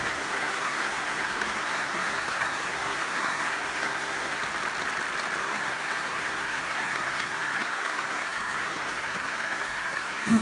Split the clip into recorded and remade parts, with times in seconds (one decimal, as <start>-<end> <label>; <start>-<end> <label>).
0.0-4.4 remade; 4.4-5.4 recorded; 5.4-10.4 remade